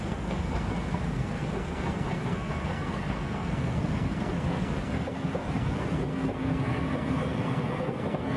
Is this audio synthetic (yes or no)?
yes